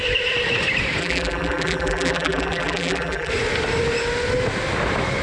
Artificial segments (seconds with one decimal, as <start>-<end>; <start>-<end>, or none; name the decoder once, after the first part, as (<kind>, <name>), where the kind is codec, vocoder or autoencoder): 1.0-3.3 (vocoder, BigVGAN v2)